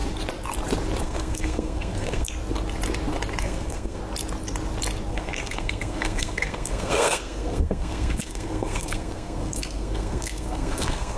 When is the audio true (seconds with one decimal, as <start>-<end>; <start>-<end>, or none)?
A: 0.0-1.0; 2.3-3.4; 4.0-5.1